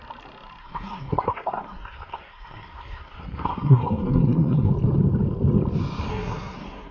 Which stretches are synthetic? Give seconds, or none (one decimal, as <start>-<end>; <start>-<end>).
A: 0.6-4.7; 6.1-6.9